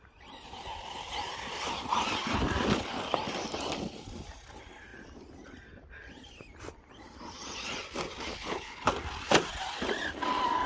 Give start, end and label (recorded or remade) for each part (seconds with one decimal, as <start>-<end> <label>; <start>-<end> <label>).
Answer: 0.0-8.3 recorded; 8.3-8.9 remade; 8.9-10.7 recorded